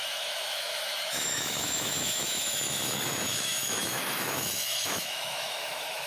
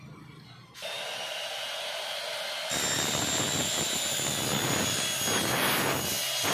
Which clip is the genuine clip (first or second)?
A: second